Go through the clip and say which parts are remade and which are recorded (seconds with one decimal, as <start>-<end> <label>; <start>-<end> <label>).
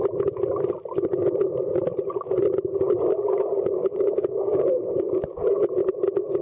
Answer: 0.0-3.8 recorded; 3.8-5.6 remade; 5.6-6.4 recorded